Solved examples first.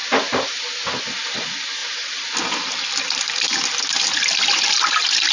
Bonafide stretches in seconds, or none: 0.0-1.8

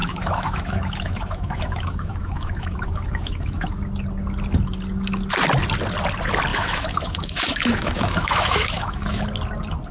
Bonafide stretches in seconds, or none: 3.8-6.5; 9.2-9.9

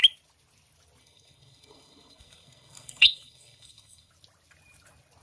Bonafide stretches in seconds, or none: 0.0-1.0; 4.1-5.2